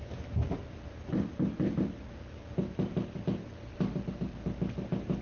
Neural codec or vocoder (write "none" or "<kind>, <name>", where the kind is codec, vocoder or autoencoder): none